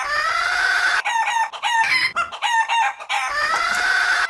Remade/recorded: recorded